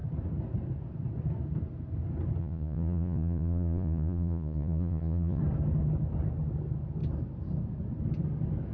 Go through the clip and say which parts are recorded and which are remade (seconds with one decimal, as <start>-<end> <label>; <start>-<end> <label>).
0.0-2.4 recorded; 2.4-5.4 remade; 5.4-8.7 recorded